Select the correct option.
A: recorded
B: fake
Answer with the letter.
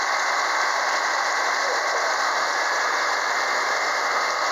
B